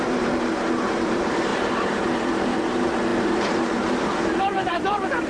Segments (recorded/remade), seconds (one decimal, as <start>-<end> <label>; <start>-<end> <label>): 0.0-5.3 remade